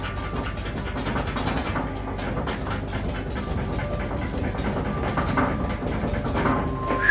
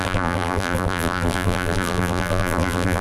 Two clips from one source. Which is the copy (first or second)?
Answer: second